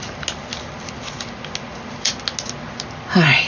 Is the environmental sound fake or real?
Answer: real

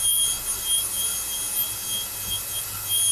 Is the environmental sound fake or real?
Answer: real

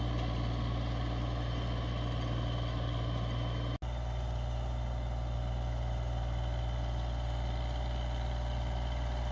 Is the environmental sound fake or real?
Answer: real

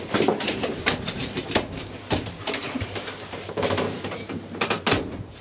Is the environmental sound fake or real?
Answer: fake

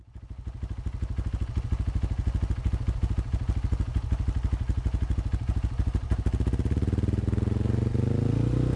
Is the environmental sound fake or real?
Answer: real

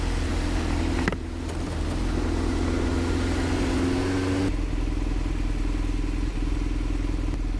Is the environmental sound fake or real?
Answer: real